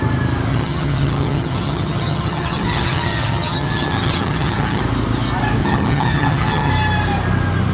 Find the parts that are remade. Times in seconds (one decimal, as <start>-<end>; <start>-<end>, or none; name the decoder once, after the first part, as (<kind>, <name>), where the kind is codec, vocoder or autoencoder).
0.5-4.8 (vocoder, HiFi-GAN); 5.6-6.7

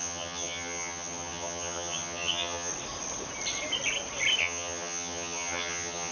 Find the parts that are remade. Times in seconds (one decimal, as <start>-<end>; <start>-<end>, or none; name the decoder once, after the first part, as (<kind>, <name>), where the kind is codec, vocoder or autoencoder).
0.0-2.7 (vocoder, HiFi-GAN); 4.4-6.1

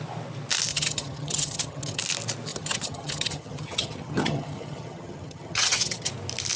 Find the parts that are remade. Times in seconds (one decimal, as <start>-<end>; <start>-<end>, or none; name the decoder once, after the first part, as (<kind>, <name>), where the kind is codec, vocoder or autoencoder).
0.7-2.0 (vocoder, HiFi-GAN); 2.5-6.1